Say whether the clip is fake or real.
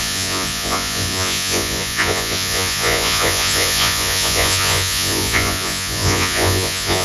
fake